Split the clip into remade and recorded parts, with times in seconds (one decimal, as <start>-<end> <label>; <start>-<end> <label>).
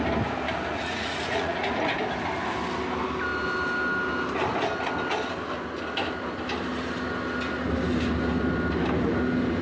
0.0-0.7 recorded; 0.7-2.0 remade; 2.0-9.6 recorded